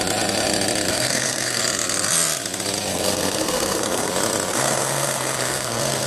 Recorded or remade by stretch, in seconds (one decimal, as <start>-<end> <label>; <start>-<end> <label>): 0.0-0.9 recorded; 0.9-1.6 remade; 1.6-2.9 recorded; 2.9-4.1 remade; 4.1-4.5 recorded; 4.5-6.1 remade